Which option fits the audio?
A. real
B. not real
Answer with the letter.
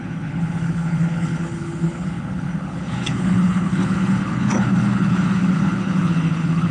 B